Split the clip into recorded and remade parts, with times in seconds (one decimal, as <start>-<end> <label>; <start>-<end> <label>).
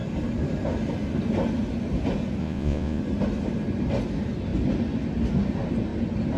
0.0-2.4 recorded; 2.4-3.0 remade; 3.0-6.4 recorded